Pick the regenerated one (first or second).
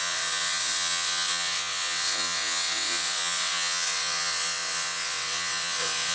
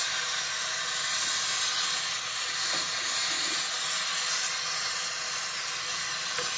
first